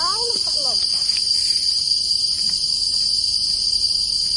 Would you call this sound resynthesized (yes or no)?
no